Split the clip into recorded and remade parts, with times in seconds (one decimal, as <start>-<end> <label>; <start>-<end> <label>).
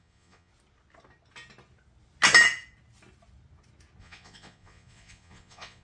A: 0.0-0.5 remade; 0.5-4.0 recorded; 4.0-5.8 remade